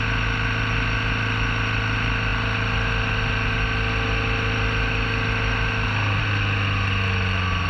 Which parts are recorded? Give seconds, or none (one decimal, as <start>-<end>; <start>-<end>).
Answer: 0.0-7.7